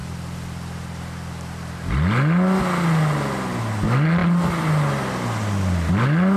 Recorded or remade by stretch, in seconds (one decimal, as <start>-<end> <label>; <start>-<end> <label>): 0.0-6.4 recorded